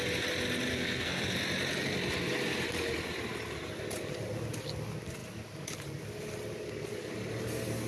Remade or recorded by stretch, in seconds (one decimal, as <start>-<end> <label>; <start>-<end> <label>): 0.0-0.7 recorded; 0.7-1.2 remade; 1.2-7.9 recorded